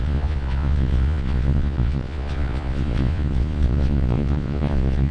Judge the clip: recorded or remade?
remade